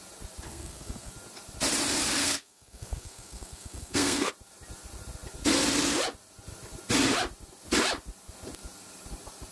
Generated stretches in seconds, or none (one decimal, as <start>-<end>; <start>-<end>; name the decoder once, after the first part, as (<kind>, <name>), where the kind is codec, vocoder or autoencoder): 0.5-1.1 (codec, SNAC); 2.2-4.3

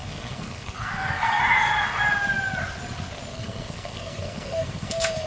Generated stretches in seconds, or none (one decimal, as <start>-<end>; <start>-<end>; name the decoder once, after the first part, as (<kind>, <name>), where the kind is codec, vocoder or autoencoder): 0.0-1.4 (codec, SNAC); 3.3-5.3

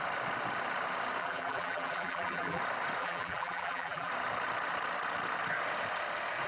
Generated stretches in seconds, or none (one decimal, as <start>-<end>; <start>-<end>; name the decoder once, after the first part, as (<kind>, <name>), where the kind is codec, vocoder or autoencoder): 1.2-2.6 (vocoder, BigVGAN v2); 3.0-4.1